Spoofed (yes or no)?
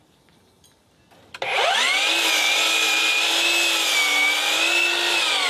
no